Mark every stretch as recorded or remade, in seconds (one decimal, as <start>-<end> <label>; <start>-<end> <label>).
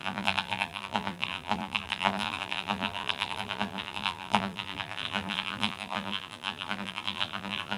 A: 0.0-7.8 remade